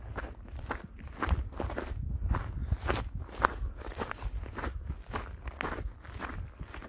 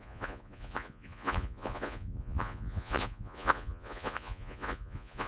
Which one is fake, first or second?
second